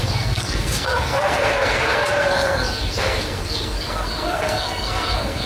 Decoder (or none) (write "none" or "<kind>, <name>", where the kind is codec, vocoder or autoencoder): codec, SNAC